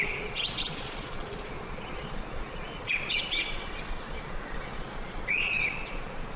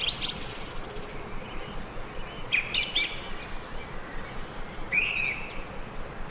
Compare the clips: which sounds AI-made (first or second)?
first